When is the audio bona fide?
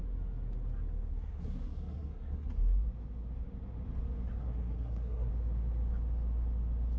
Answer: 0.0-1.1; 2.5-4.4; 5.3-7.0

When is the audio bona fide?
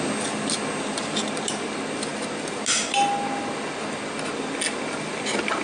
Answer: 0.0-5.6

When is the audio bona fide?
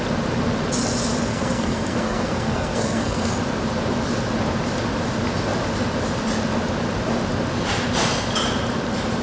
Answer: 0.0-1.3; 3.3-9.2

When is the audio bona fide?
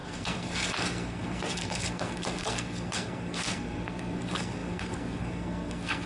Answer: none